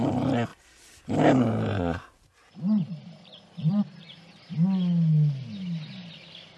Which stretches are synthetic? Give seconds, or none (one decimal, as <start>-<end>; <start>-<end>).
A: 0.5-4.5